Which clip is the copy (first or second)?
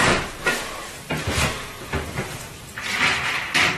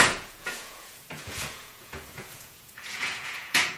second